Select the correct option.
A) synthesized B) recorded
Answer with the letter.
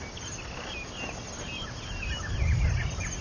B